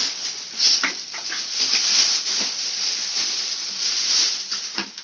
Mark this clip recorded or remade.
recorded